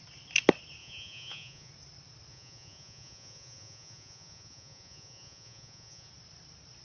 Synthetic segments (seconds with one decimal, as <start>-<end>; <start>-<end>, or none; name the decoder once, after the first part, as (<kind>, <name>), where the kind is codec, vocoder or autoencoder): 0.8-1.7 (vocoder, Vocos); 2.3-6.1